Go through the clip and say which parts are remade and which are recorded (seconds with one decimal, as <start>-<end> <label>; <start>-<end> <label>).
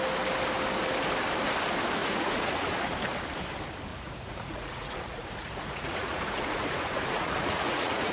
0.0-2.0 recorded; 2.0-2.7 remade; 2.7-3.9 recorded; 3.9-8.1 remade